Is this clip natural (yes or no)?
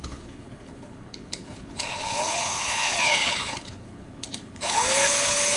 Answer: no